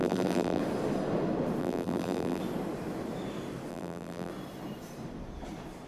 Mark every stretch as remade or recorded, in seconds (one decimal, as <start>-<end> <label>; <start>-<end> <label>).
0.0-0.6 remade; 0.6-1.6 recorded; 1.6-2.4 remade; 2.4-3.7 recorded; 3.7-4.3 remade; 4.3-5.9 recorded

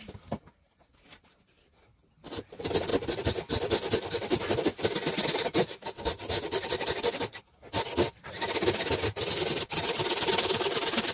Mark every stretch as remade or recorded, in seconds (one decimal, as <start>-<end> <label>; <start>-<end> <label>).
0.0-2.9 recorded; 2.9-6.0 remade; 6.0-11.1 recorded

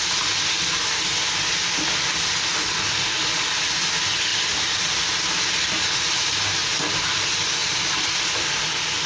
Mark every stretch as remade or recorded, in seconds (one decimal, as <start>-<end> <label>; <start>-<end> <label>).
0.0-4.3 recorded; 4.3-5.7 remade; 5.7-6.6 recorded; 6.6-7.1 remade; 7.1-7.6 recorded; 7.6-8.6 remade; 8.6-9.1 recorded

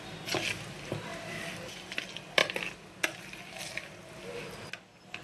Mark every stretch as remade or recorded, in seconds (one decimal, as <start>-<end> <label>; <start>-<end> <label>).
0.0-1.1 recorded; 1.1-2.0 remade; 2.0-5.2 recorded

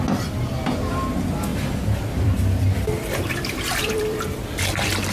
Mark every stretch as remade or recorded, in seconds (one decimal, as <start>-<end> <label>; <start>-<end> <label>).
0.0-1.5 recorded; 1.5-4.6 remade; 4.6-5.1 recorded

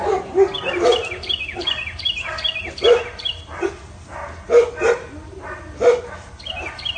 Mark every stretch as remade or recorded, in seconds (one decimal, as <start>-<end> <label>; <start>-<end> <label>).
0.0-1.0 recorded; 1.0-2.5 remade; 2.5-7.0 recorded